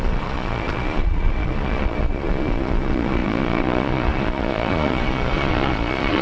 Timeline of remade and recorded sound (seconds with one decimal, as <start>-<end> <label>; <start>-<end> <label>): 0.0-6.2 remade